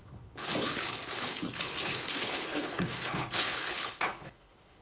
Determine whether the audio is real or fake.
fake